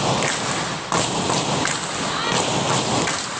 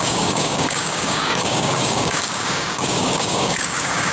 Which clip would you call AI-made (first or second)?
second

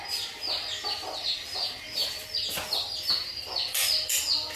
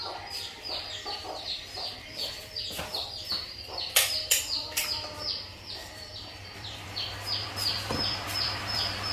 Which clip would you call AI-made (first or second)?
second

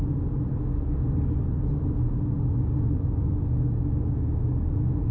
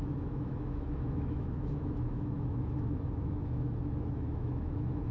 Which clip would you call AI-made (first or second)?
second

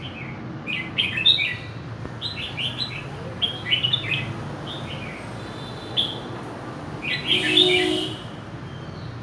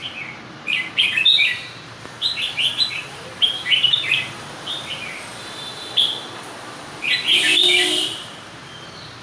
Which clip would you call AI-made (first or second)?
second